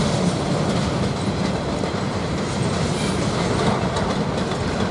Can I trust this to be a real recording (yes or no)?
yes